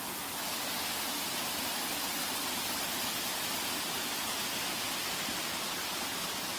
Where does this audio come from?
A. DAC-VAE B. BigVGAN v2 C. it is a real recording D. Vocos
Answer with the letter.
C